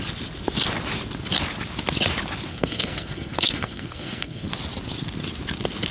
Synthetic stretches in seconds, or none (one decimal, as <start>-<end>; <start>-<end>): 2.5-4.5